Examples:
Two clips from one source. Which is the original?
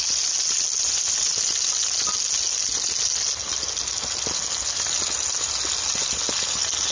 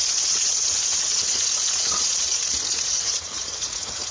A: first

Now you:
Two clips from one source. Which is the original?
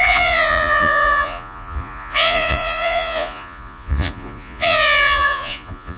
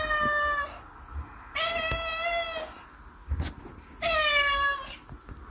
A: second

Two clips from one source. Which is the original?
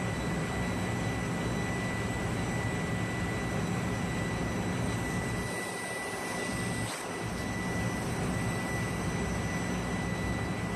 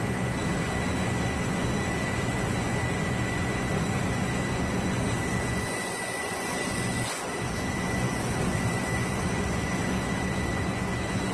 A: first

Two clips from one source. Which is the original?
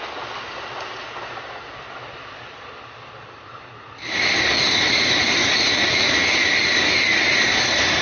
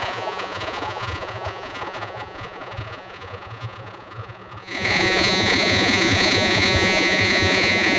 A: first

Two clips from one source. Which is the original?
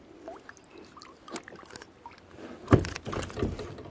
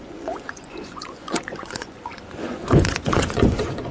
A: first